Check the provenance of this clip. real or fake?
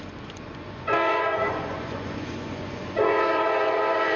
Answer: fake